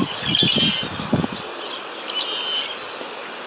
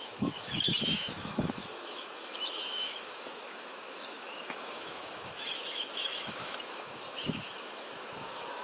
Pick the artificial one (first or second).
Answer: second